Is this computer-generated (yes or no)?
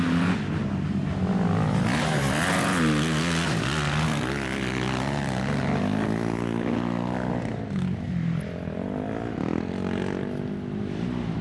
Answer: no